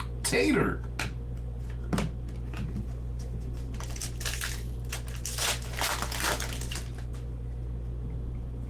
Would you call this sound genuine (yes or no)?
yes